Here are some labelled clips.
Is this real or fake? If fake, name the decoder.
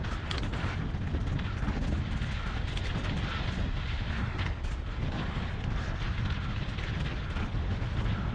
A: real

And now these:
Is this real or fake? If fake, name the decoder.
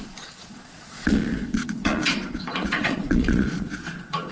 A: fake, vocoder, Vocos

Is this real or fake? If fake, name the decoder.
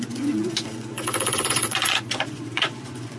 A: fake, vocoder, Vocos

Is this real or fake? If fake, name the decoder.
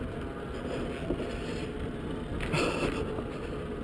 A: real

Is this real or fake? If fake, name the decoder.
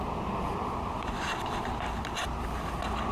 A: real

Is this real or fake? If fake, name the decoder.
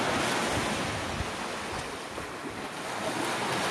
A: real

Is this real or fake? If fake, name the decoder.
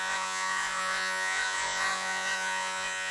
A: fake, vocoder, Vocos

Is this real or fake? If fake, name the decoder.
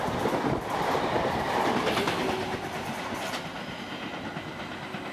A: real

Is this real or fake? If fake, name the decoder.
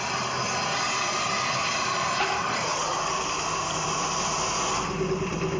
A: real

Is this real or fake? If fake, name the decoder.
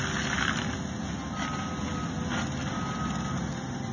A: real